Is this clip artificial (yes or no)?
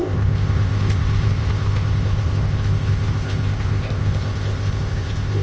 yes